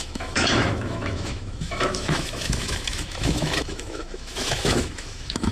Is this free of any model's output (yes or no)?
no